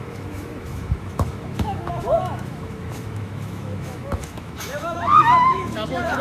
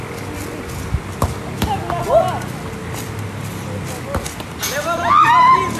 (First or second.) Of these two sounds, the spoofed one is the first